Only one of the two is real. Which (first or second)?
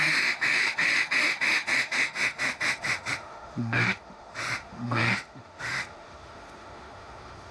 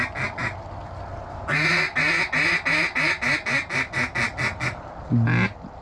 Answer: second